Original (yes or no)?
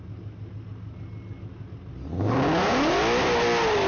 yes